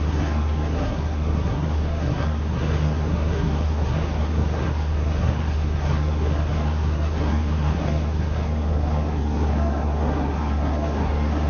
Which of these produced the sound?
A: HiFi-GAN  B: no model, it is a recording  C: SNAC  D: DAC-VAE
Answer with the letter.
C